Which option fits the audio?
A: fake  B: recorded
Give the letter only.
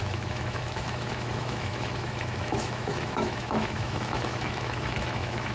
A